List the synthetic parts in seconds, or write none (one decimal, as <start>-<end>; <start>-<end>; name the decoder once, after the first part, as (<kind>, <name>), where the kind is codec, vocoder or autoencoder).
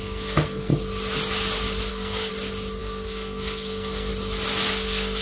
0.0-0.7 (codec, SNAC); 1.9-2.3; 2.8-4.1; 4.7-5.2